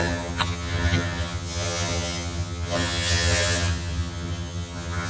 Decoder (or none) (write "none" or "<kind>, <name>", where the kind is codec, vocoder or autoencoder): vocoder, HiFi-GAN